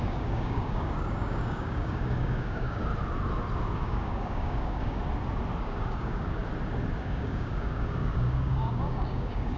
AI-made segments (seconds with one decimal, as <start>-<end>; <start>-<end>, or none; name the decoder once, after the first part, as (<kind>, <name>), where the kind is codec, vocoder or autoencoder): 0.0-2.9 (codec, DAC); 3.8-5.0; 5.6-6.4; 7.0-9.6